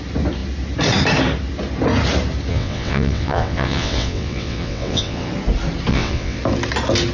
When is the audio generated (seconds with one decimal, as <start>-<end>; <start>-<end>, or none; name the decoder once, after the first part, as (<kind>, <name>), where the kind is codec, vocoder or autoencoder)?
2.5-5.3 (vocoder, WaveNeXt); 5.9-6.4